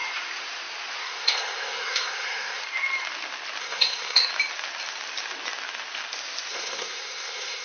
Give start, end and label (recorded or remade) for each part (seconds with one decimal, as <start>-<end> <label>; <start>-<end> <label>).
0.0-1.0 recorded; 1.0-2.6 remade; 2.6-3.6 recorded; 3.6-4.3 remade; 4.3-6.5 recorded; 6.5-7.6 remade